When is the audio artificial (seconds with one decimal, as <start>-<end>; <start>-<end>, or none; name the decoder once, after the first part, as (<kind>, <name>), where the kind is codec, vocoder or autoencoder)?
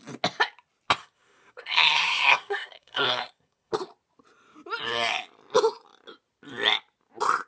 1.0-3.7 (codec, SNAC)